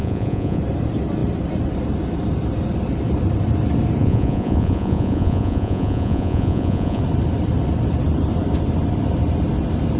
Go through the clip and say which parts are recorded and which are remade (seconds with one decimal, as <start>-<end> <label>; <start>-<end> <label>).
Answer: 0.0-0.6 remade; 0.6-4.0 recorded; 4.0-7.0 remade; 7.0-10.0 recorded